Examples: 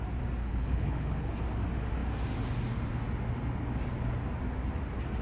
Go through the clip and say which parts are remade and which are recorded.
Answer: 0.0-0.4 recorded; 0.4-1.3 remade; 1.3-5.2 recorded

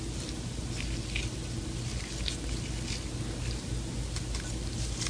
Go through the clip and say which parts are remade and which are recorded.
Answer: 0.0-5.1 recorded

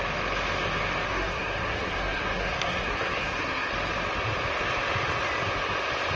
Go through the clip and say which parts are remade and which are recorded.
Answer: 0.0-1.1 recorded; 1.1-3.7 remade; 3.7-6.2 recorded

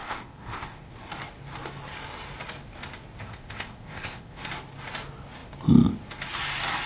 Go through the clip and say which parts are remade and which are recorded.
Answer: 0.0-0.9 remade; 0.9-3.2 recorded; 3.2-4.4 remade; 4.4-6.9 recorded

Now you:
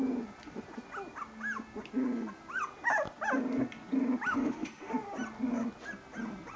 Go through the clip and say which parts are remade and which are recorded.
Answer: 0.0-4.3 recorded; 4.3-4.9 remade; 4.9-6.6 recorded